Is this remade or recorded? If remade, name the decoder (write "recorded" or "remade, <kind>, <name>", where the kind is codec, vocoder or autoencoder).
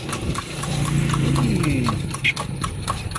recorded